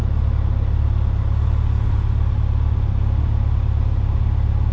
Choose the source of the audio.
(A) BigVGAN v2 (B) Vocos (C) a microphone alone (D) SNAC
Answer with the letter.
C